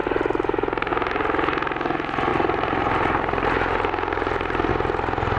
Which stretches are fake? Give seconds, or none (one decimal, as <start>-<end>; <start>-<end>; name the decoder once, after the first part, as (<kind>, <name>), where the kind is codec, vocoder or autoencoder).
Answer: 0.0-0.9 (vocoder, BigVGAN v2); 2.3-4.7